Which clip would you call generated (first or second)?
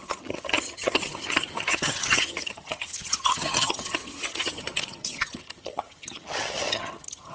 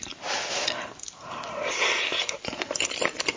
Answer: first